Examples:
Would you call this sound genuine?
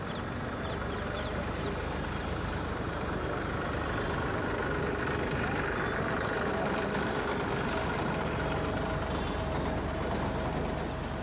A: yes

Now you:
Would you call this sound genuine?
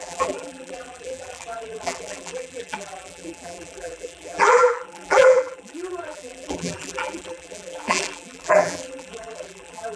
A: no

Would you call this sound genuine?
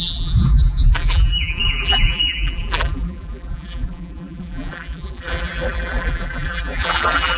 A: no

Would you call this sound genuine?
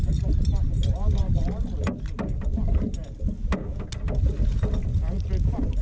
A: yes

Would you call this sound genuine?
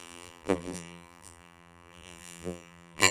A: no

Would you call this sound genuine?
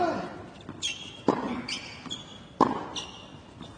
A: yes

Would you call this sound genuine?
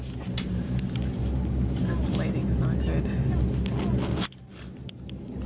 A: yes